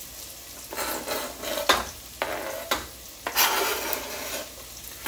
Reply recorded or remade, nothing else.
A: recorded